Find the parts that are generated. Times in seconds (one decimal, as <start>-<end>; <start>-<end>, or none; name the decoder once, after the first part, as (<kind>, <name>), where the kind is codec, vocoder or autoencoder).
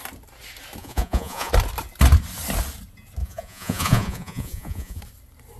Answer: 0.8-1.5 (vocoder, Vocos); 3.2-5.0